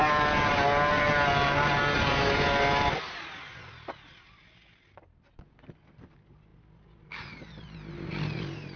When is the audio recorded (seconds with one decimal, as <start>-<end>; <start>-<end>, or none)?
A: 0.0-8.8